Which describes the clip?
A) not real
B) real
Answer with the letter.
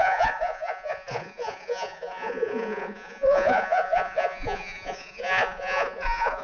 A